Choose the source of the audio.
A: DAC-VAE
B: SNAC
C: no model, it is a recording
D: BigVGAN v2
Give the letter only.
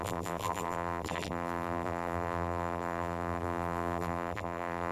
D